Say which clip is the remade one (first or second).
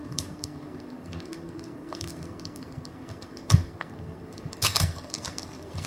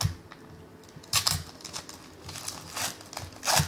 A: first